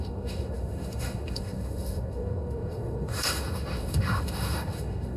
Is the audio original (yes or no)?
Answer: no